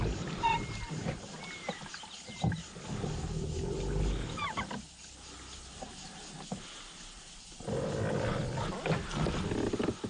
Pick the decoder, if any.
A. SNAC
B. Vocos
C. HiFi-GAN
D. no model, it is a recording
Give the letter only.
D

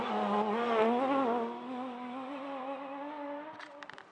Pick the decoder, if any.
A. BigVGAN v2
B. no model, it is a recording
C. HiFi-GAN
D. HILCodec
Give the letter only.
B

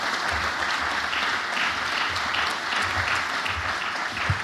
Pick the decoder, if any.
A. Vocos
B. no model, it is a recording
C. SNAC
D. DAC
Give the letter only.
B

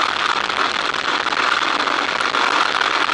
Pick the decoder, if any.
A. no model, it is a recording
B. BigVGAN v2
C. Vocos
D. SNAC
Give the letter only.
A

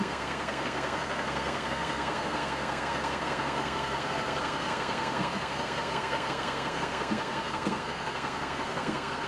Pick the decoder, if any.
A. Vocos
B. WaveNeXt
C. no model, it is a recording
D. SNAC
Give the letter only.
D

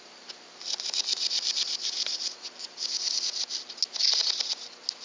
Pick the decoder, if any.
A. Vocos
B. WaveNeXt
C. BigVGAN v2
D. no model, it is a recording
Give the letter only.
D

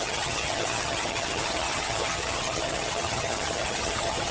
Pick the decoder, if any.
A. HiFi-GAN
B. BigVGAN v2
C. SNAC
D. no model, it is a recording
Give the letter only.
A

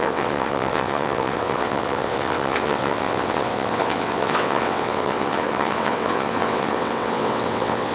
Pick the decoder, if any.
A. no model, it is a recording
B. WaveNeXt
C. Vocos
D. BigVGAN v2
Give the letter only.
B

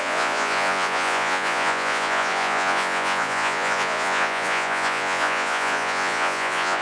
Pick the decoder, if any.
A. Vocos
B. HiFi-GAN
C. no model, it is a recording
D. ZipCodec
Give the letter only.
A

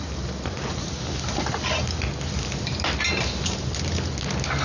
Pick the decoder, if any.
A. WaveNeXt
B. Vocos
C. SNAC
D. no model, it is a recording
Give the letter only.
D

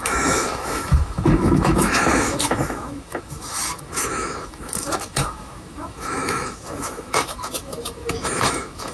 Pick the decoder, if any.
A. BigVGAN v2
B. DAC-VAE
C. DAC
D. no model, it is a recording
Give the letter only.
B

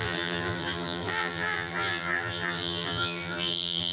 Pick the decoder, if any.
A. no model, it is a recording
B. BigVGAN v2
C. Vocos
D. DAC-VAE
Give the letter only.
B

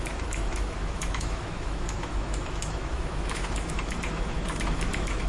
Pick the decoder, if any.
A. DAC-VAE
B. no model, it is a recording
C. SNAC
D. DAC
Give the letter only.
A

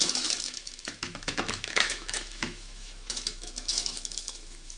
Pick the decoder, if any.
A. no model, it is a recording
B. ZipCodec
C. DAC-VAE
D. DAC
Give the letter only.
C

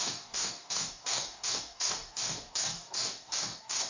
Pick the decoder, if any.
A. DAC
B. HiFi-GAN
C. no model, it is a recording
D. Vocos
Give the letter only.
A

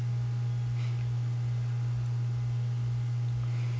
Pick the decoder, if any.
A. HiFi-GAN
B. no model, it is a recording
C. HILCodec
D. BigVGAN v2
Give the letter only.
B